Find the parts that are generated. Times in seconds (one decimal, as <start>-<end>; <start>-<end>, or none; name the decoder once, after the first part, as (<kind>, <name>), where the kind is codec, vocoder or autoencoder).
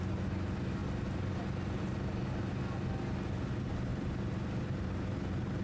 none